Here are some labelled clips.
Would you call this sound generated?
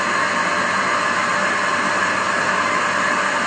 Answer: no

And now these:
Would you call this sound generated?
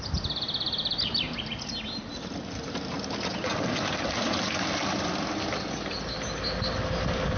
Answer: no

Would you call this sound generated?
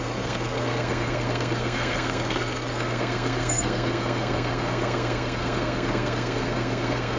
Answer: yes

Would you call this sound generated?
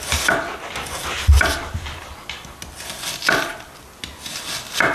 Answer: no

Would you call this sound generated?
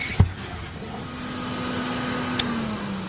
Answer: no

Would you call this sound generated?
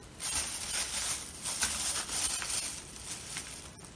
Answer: no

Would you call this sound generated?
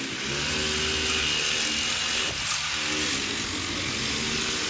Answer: no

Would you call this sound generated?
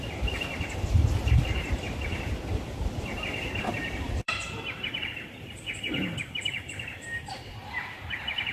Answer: yes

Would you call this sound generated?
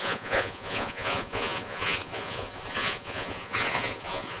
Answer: yes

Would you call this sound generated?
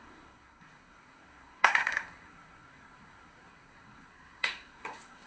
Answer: yes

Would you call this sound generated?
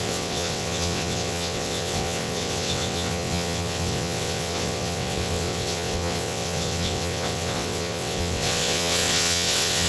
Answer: yes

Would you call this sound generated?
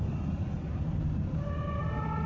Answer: no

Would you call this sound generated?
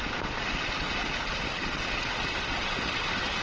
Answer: no